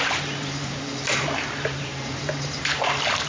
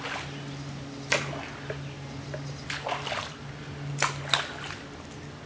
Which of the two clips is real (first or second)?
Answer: second